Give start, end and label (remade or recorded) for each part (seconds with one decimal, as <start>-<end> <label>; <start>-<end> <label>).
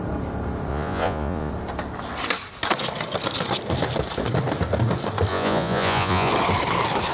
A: 0.0-0.7 recorded; 0.7-1.5 remade; 1.5-5.3 recorded; 5.3-6.3 remade; 6.3-7.1 recorded